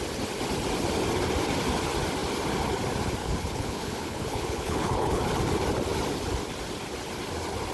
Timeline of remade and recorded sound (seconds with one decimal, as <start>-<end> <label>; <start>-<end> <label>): 0.0-3.2 recorded; 3.2-5.2 remade; 5.2-7.7 recorded